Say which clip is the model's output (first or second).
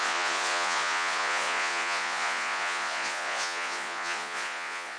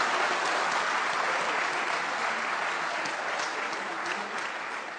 first